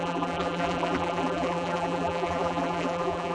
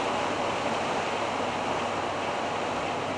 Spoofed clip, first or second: first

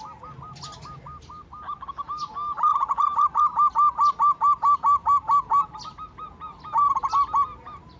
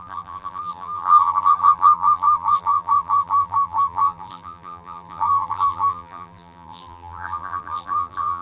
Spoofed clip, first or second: second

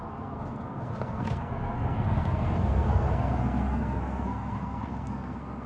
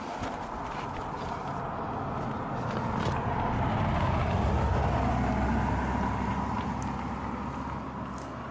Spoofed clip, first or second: first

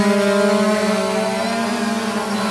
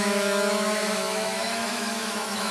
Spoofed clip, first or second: second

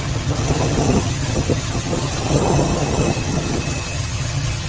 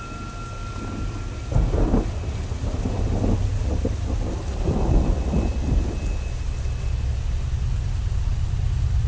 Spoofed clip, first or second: first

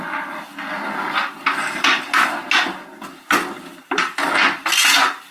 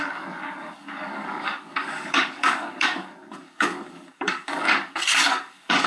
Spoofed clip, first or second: second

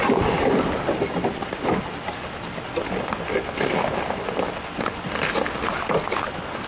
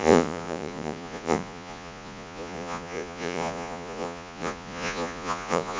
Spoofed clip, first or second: second